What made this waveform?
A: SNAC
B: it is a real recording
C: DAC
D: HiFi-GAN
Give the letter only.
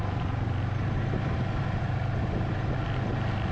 B